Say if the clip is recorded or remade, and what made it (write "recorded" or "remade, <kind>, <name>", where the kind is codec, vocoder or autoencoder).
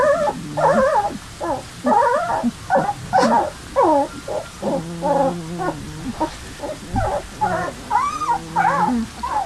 recorded